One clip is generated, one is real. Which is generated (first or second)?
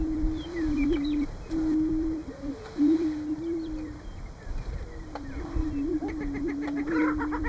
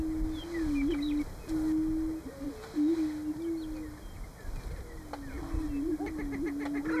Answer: first